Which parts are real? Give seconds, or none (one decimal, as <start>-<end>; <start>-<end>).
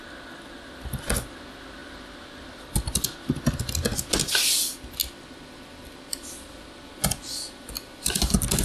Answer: 0.0-8.6